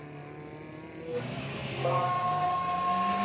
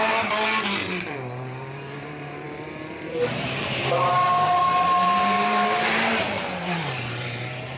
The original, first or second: first